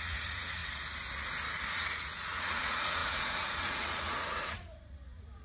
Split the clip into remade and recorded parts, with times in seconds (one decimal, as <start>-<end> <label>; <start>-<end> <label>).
0.0-0.6 remade; 0.6-1.7 recorded; 1.7-5.4 remade